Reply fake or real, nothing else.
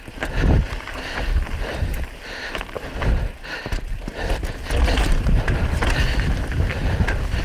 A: real